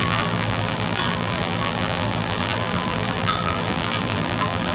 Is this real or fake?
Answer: fake